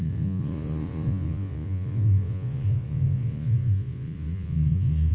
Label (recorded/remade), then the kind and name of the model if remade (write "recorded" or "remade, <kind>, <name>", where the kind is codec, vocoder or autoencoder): remade, vocoder, Vocos